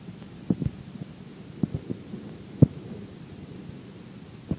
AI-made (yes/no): no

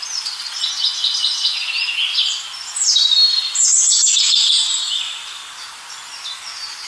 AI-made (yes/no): no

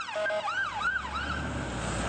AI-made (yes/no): no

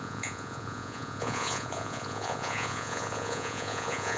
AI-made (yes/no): yes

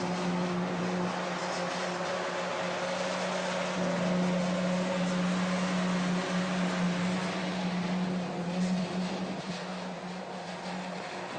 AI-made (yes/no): no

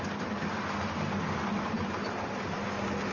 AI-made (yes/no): no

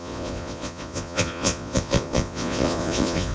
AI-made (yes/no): yes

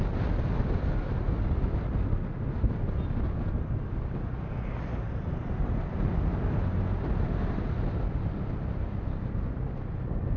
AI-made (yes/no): no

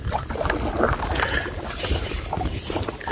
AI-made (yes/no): no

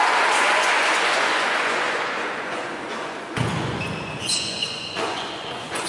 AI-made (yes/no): yes